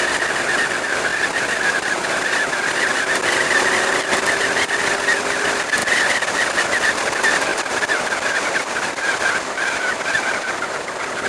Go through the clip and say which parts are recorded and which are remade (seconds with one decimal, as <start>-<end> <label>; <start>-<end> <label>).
0.0-1.1 recorded; 1.1-3.0 remade; 3.0-5.8 recorded; 5.8-6.4 remade; 6.4-7.5 recorded; 7.5-8.3 remade; 8.3-11.3 recorded